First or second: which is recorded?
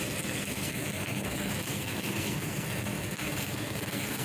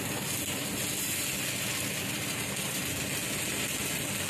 second